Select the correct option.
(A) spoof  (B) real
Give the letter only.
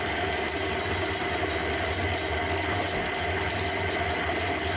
B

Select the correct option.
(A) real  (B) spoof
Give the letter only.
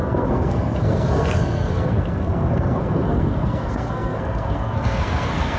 B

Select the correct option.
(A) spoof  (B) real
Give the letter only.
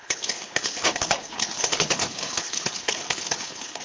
A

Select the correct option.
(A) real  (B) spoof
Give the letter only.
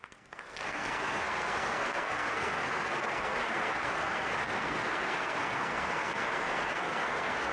B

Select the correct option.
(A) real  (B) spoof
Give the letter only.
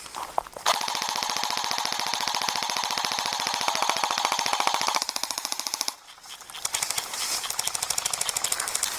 B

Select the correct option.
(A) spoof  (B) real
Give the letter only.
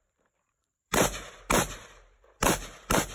A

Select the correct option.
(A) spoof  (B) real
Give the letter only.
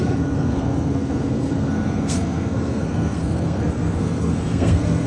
A